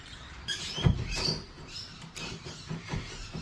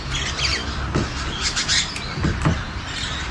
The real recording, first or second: second